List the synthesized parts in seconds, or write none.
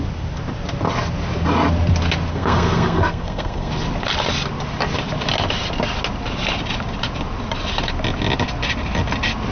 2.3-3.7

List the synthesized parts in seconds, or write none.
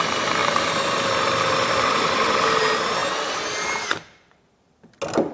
0.0-3.0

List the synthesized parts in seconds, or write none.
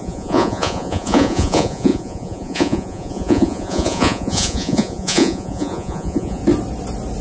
0.0-6.4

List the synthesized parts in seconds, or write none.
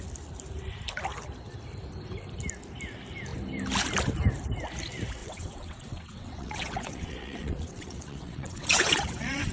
5.2-9.5